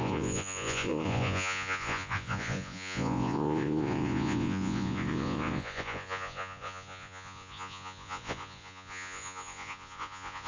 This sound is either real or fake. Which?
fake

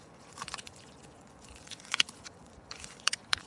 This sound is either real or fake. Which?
fake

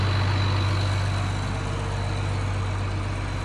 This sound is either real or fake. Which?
real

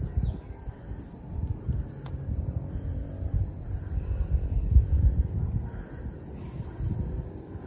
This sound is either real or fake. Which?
real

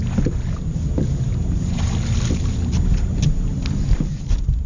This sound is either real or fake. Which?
real